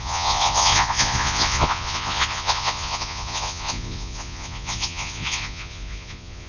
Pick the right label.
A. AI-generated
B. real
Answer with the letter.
A